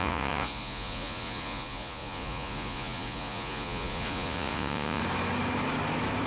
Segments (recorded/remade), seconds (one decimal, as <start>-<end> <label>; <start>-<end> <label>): 0.0-5.0 remade; 5.0-6.3 recorded